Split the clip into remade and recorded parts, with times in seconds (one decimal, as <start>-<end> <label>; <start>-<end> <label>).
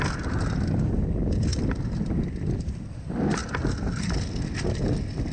0.0-5.3 recorded